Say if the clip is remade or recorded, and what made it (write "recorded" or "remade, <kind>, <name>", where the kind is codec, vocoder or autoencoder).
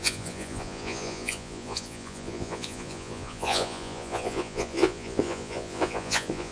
remade, vocoder, Vocos